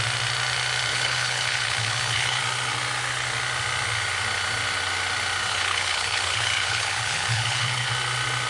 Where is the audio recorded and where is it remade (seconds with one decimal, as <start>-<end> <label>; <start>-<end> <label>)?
0.0-0.9 recorded; 0.9-2.4 remade; 2.4-5.5 recorded; 5.5-7.9 remade; 7.9-8.5 recorded